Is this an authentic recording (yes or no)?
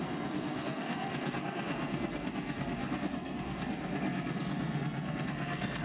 no